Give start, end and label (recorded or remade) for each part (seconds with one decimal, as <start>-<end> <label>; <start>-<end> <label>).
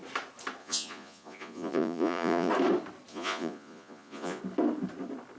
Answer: 0.0-0.6 recorded; 0.6-2.5 remade; 2.5-3.1 recorded; 3.1-4.4 remade; 4.4-5.4 recorded